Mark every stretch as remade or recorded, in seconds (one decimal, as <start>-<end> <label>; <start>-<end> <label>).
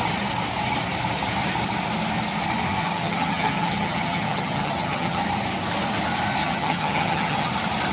0.0-2.8 recorded; 2.8-5.2 remade; 5.2-6.4 recorded; 6.4-7.5 remade; 7.5-7.9 recorded